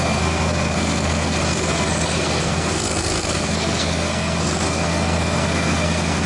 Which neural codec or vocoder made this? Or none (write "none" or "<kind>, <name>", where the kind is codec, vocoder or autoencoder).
codec, SNAC